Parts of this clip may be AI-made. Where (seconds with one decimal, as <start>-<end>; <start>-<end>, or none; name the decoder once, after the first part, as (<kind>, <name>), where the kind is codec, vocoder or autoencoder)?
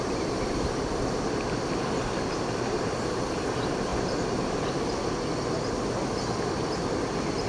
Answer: none